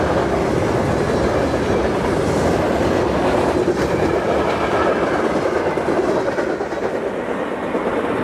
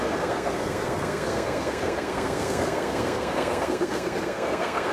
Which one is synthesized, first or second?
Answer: second